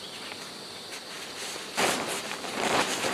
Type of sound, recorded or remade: recorded